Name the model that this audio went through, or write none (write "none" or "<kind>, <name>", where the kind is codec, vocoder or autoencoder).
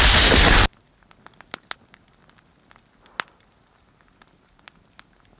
none